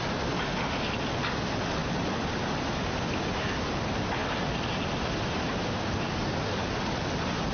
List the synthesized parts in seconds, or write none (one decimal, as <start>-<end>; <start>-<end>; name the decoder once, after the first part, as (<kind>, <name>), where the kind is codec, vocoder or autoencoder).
none